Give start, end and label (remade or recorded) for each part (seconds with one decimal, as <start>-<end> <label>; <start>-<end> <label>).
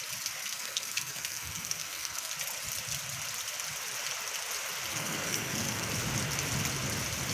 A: 0.0-0.4 recorded; 0.4-2.3 remade; 2.3-4.9 recorded; 4.9-5.9 remade; 5.9-7.3 recorded